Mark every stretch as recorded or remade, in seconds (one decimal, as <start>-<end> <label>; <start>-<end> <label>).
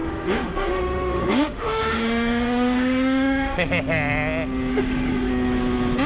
0.0-3.7 remade; 3.7-4.7 recorded; 4.7-5.3 remade; 5.3-6.1 recorded